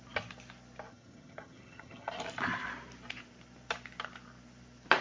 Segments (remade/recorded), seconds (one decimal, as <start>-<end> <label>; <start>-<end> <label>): 0.0-0.9 recorded; 0.9-2.1 remade; 2.1-5.0 recorded